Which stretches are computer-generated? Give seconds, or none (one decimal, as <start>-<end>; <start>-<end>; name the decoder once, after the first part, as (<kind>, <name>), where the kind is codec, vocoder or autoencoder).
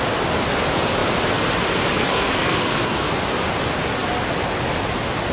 2.0-3.1 (codec, SNAC)